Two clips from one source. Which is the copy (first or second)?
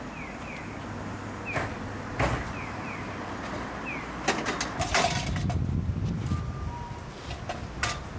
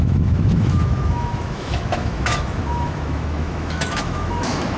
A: second